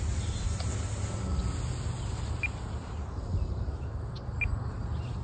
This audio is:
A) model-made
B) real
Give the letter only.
B